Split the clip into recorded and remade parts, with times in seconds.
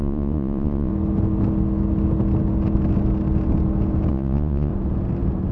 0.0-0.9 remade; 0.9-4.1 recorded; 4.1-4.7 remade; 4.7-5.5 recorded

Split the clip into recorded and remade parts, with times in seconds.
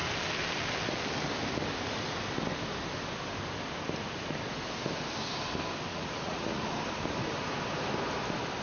0.0-5.9 recorded; 5.9-6.6 remade; 6.6-8.6 recorded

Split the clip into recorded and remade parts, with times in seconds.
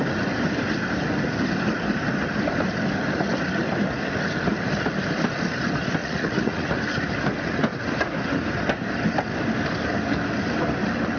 0.0-6.0 recorded; 6.0-6.7 remade; 6.7-11.2 recorded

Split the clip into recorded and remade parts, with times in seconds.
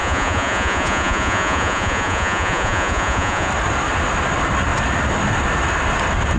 0.0-3.5 remade; 3.5-6.4 recorded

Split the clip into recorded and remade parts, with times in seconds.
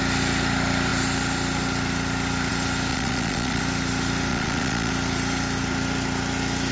0.0-2.9 recorded; 2.9-3.6 remade; 3.6-4.3 recorded; 4.3-4.9 remade; 4.9-6.7 recorded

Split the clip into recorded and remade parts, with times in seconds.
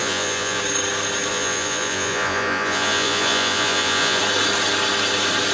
0.0-0.6 remade; 0.6-1.3 recorded; 1.3-4.2 remade; 4.2-5.5 recorded